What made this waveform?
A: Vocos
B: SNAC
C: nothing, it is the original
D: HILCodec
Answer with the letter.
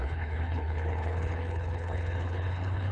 D